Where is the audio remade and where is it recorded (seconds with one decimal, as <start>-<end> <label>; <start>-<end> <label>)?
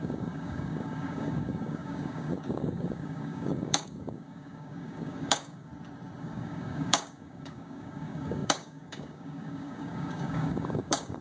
0.0-5.7 remade; 5.7-6.2 recorded; 6.2-11.2 remade